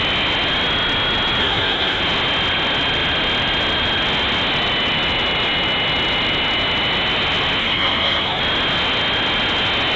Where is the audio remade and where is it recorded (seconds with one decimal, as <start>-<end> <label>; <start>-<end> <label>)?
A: 0.0-1.4 recorded; 1.4-2.0 remade; 2.0-7.6 recorded; 7.6-8.4 remade; 8.4-10.0 recorded